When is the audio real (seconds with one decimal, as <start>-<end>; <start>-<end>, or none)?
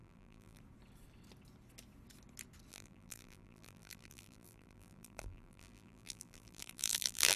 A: 0.6-2.7